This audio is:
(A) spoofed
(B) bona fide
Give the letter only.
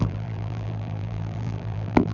A